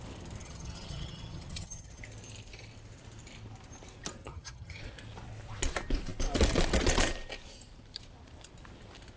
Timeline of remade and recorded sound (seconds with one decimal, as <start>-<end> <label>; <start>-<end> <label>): 0.0-0.4 recorded; 0.4-2.0 remade; 2.0-4.2 recorded; 4.2-4.8 remade; 4.8-9.2 recorded